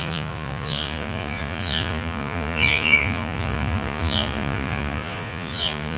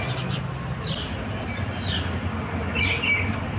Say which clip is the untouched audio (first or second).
second